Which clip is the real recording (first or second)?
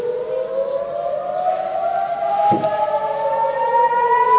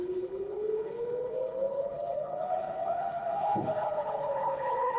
first